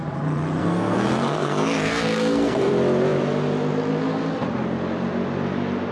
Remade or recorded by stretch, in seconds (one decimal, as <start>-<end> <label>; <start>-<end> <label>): 0.0-0.6 recorded; 0.6-2.7 remade; 2.7-5.9 recorded